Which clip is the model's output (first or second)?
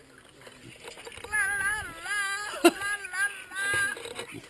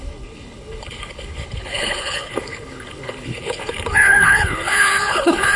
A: second